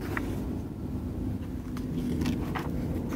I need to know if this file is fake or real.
real